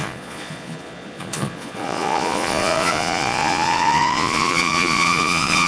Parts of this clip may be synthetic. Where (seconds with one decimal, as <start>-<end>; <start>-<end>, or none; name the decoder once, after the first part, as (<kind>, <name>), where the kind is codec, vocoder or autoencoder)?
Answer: 0.0-5.7 (vocoder, Vocos)